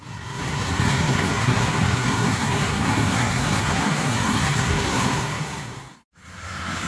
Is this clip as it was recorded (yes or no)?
no